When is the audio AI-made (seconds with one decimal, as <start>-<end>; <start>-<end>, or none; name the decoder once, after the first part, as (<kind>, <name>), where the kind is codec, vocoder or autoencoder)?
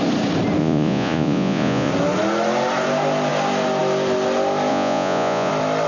0.6-1.9 (vocoder, Vocos); 4.7-5.5